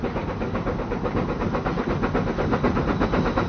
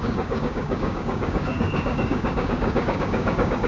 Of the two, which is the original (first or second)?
first